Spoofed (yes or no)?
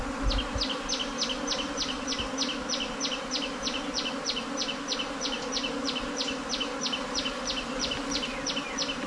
no